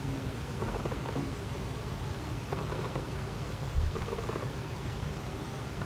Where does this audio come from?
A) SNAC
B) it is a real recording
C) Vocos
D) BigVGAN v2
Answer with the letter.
A